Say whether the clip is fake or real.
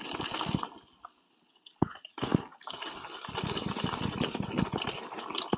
real